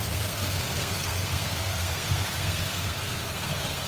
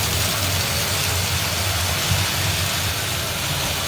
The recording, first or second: second